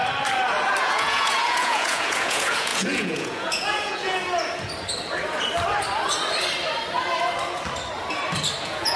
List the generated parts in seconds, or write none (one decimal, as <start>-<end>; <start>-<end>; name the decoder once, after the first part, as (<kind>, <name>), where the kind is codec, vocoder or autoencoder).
0.8-4.2 (vocoder, Vocos); 8.6-9.0